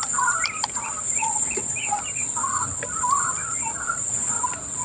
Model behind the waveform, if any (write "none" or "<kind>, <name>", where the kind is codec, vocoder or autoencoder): none